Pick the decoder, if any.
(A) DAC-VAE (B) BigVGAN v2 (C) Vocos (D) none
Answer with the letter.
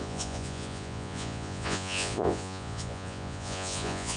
C